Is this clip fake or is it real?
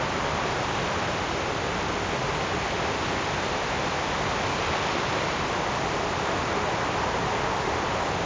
real